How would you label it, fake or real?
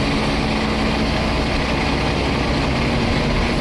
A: real